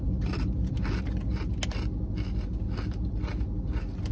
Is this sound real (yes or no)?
yes